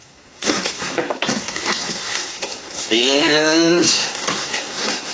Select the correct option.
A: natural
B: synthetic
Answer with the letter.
B